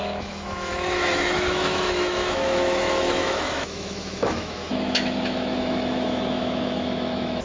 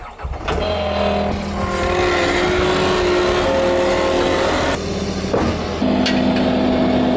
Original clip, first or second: second